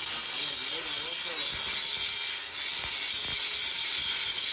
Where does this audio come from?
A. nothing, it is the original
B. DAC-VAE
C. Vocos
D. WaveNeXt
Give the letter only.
A